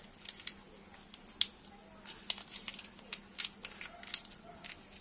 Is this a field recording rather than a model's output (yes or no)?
yes